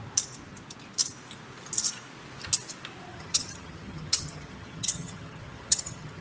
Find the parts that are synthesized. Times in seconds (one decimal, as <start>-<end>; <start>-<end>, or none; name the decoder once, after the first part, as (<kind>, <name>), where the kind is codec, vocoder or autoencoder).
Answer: 3.1-6.2 (vocoder, HiFi-GAN)